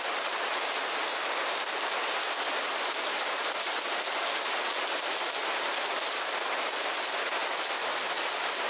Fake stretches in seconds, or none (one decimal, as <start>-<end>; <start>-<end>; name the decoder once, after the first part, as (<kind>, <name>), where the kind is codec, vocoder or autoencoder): none